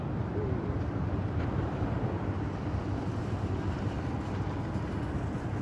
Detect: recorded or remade remade